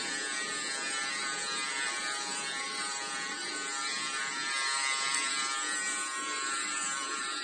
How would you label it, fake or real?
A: fake